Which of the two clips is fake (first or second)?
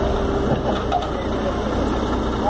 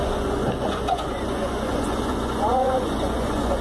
second